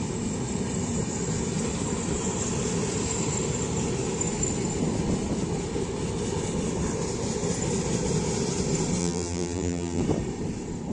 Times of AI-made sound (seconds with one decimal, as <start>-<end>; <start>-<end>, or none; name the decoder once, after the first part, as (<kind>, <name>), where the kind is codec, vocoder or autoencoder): 9.0-10.0 (vocoder, BigVGAN v2)